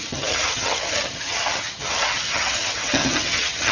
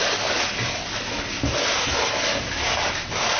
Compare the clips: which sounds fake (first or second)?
first